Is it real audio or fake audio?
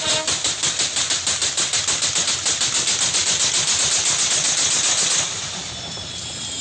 real